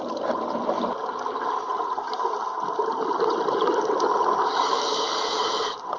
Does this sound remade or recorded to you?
recorded